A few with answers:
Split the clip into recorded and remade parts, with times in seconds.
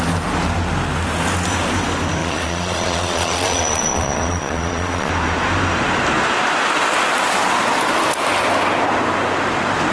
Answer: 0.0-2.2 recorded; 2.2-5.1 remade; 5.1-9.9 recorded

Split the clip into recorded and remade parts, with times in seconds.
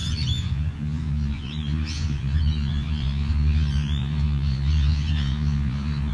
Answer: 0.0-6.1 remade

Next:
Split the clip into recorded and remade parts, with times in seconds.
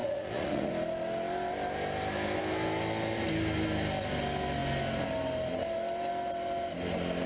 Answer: 0.0-0.7 remade; 0.7-7.3 recorded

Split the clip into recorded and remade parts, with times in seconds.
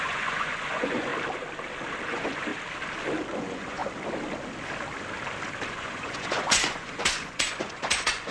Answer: 0.0-1.1 remade; 1.1-2.1 recorded; 2.1-2.5 remade; 2.5-3.3 recorded; 3.3-3.8 remade; 3.8-5.7 recorded; 5.7-8.3 remade